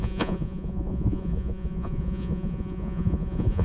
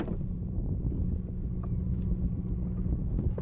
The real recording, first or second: second